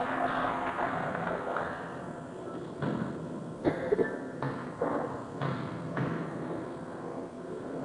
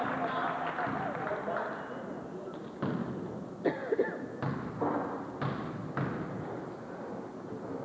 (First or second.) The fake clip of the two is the first